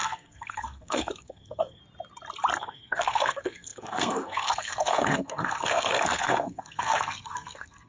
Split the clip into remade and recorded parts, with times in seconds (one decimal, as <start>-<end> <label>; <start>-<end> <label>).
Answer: 0.0-1.8 remade; 1.8-2.6 recorded; 2.6-7.9 remade